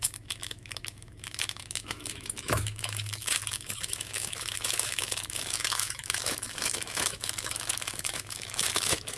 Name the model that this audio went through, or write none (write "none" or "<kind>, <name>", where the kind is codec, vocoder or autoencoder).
autoencoder, DAC-VAE